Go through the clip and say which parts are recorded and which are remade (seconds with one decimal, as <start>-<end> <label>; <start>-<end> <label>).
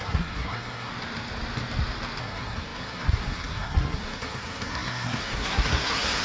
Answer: 0.0-0.9 remade; 0.9-2.2 recorded; 2.2-6.2 remade